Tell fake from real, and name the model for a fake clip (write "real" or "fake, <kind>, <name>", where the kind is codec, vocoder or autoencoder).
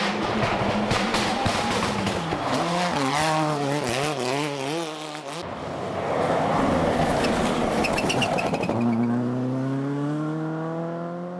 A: real